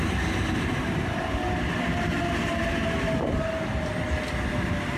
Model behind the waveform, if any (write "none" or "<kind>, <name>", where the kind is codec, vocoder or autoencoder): none